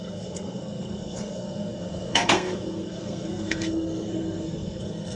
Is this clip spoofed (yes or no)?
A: yes